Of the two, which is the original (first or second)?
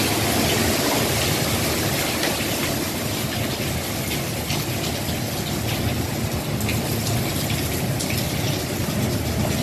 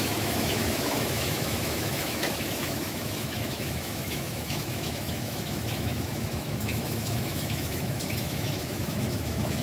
first